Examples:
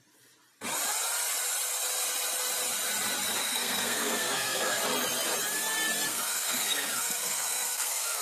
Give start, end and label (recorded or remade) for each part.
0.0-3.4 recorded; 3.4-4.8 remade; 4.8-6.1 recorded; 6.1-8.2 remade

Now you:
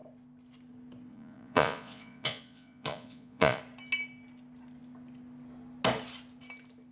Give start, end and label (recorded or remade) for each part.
0.0-1.1 recorded; 1.1-3.6 remade; 3.6-6.9 recorded

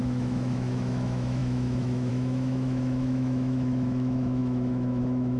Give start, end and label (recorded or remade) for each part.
0.0-5.4 remade

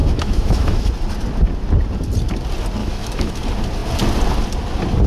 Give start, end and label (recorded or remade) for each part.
0.0-0.8 remade; 0.8-2.8 recorded; 2.8-3.4 remade; 3.4-5.1 recorded